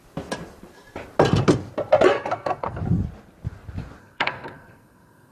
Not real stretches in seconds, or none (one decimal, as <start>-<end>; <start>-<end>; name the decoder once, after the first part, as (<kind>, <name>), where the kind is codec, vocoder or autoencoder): 2.1-2.8 (codec, SNAC); 4.0-5.3